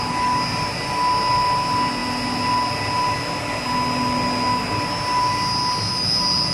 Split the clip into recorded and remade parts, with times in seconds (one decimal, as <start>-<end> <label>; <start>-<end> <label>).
0.0-6.5 recorded